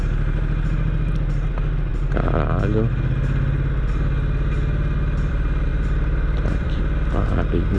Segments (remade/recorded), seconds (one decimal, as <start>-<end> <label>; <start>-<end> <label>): 0.0-5.7 recorded; 5.7-6.8 remade; 6.8-7.8 recorded